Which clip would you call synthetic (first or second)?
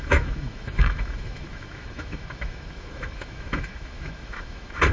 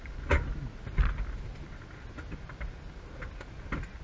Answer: first